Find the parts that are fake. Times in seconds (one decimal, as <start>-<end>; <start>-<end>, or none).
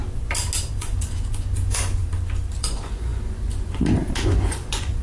0.7-2.0; 2.6-5.0